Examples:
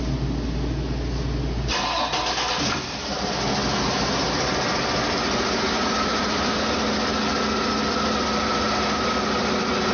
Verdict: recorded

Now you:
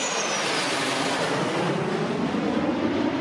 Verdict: recorded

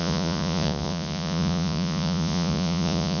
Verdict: remade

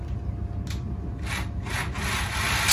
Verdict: recorded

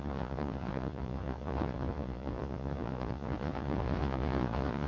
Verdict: remade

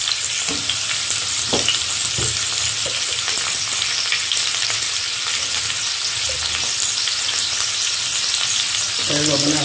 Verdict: recorded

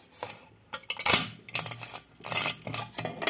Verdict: recorded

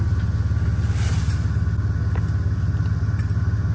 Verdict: recorded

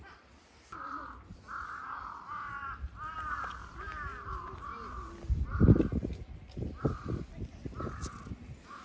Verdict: recorded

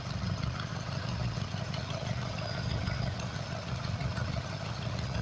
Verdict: remade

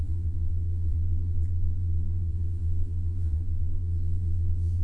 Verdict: remade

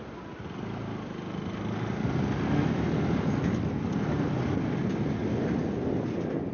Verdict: recorded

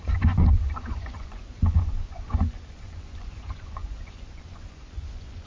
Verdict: remade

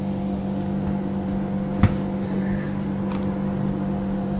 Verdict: recorded